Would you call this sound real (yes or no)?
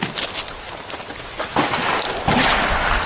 yes